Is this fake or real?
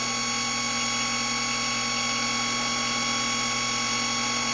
real